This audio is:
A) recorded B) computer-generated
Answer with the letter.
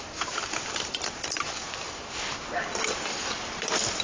A